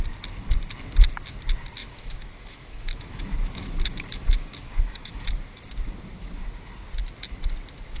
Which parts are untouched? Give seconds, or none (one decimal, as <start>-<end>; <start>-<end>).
0.0-1.8; 5.3-8.0